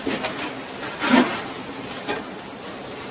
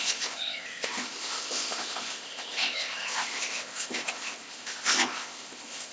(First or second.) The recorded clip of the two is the first